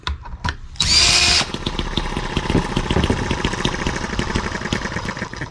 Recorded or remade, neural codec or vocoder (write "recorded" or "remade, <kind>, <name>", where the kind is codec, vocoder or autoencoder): recorded